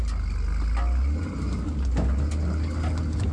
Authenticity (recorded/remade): recorded